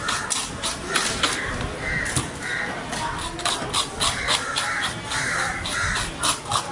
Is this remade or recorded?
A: recorded